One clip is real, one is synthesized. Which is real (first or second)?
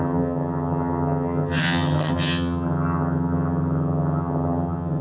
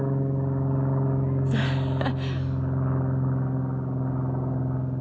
second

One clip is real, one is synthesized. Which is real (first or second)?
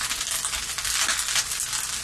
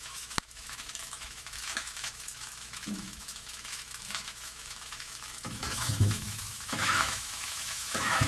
first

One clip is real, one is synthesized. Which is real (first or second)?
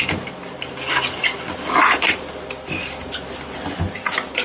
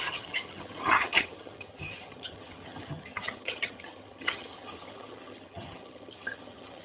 first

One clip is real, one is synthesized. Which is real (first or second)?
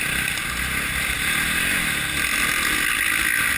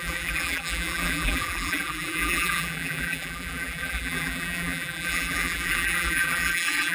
first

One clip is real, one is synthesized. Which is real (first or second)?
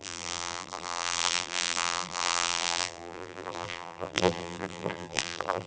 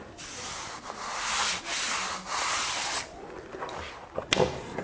second